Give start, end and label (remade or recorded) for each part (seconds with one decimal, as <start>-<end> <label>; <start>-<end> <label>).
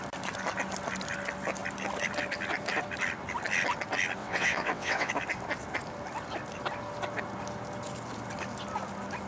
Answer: 0.0-4.2 recorded; 4.2-5.1 remade; 5.1-9.3 recorded